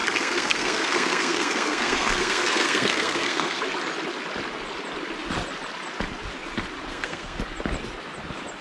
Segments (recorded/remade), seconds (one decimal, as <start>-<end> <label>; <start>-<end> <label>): 0.0-3.6 remade; 3.6-6.9 recorded; 6.9-7.4 remade; 7.4-8.6 recorded